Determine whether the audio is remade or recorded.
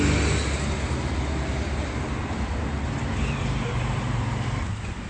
recorded